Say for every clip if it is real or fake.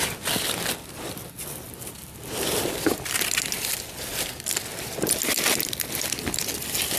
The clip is fake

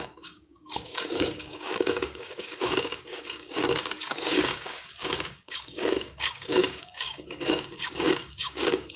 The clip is fake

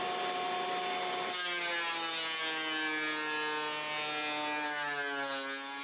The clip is real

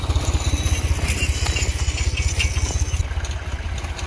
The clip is real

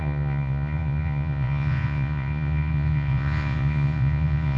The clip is fake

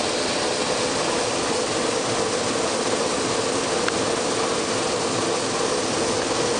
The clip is real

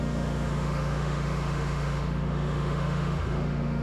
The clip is fake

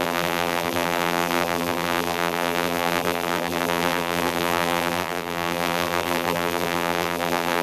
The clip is fake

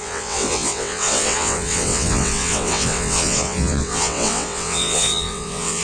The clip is fake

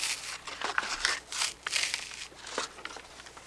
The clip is real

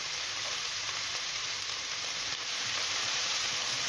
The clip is fake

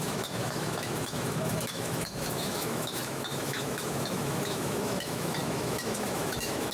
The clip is fake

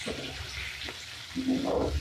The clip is real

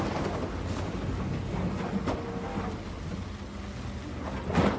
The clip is real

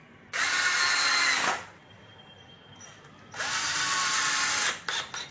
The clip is real